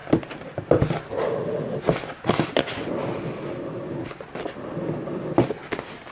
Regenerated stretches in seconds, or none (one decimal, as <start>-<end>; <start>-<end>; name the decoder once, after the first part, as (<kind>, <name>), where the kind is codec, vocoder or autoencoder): none